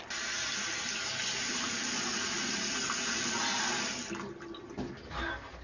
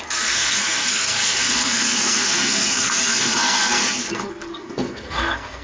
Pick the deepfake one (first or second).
second